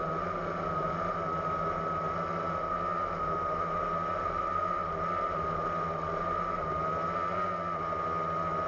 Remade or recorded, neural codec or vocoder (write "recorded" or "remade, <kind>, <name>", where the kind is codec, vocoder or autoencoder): recorded